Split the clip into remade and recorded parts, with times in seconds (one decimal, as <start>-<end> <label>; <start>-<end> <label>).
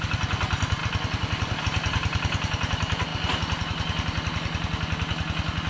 0.0-5.7 recorded